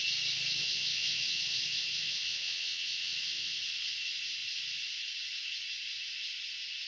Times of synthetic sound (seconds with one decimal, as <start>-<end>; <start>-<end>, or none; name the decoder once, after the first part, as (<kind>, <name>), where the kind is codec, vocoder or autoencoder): 0.6-3.6 (vocoder, WaveNeXt)